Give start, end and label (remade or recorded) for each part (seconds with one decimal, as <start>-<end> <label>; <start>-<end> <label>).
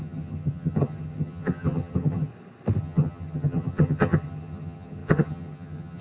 0.0-2.3 remade; 2.3-2.8 recorded; 2.8-6.0 remade